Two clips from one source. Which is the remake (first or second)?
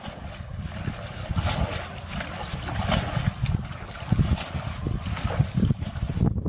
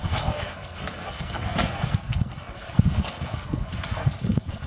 second